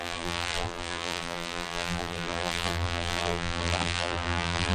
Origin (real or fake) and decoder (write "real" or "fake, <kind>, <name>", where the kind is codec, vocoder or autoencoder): fake, vocoder, BigVGAN v2